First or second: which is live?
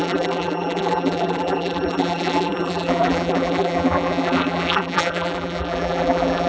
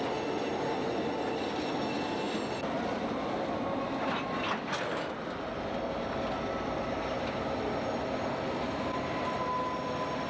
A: second